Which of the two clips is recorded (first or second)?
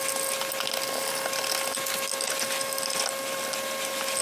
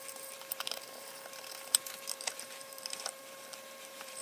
first